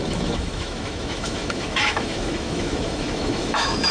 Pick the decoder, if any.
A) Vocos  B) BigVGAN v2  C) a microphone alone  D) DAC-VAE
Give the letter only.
D